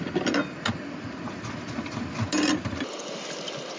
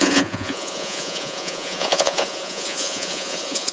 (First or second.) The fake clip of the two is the second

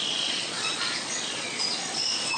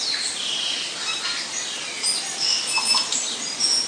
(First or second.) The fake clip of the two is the first